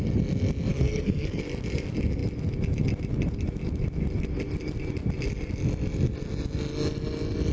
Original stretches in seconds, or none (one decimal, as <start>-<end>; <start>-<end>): 0.0-0.7; 1.4-7.5